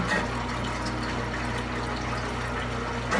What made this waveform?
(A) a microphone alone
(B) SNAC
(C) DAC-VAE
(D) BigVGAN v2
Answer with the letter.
A